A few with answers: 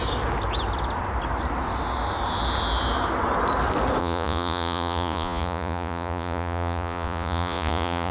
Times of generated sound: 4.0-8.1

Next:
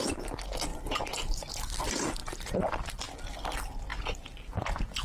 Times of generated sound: 0.7-1.8; 2.2-2.9

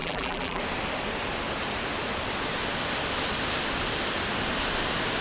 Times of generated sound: 0.0-0.6